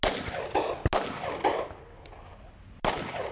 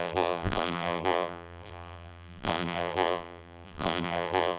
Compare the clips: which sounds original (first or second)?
first